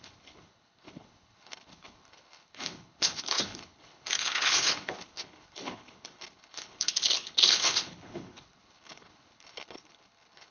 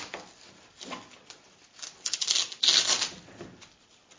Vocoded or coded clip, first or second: first